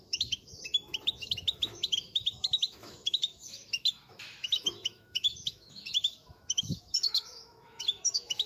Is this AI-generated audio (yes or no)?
yes